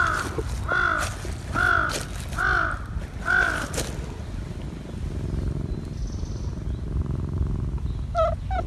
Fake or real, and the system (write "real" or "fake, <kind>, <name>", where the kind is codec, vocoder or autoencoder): real